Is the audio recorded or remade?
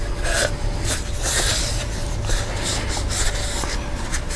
recorded